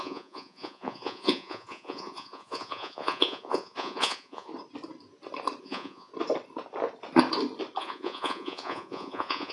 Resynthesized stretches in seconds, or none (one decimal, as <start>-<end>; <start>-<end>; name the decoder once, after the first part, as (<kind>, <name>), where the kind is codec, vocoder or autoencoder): 0.0-4.5 (vocoder, Vocos); 5.6-6.1; 7.8-9.5

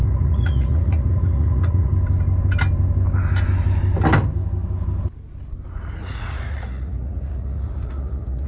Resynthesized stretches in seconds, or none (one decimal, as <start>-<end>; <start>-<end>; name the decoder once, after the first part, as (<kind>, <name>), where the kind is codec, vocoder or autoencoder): 0.0-1.9 (vocoder, Vocos); 5.7-8.5

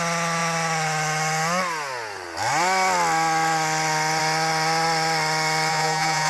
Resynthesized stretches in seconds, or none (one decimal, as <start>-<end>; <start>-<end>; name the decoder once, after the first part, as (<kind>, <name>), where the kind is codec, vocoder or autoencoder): 5.7-6.3 (vocoder, Vocos)

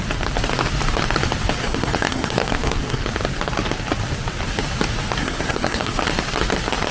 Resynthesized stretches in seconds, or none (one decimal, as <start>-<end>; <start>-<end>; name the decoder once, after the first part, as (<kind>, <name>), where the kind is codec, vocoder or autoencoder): 1.6-3.0 (codec, SNAC); 5.2-6.0